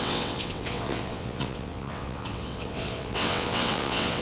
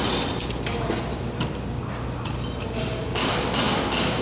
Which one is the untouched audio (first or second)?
second